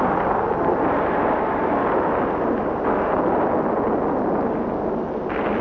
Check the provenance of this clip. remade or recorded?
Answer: recorded